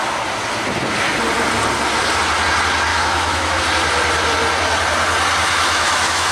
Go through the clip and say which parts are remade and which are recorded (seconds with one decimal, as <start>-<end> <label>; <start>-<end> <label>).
0.0-2.9 recorded; 2.9-3.6 remade; 3.6-5.4 recorded; 5.4-6.3 remade